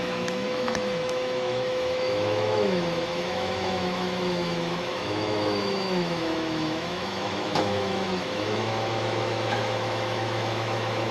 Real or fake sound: fake